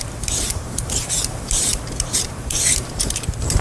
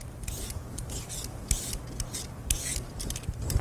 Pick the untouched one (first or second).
second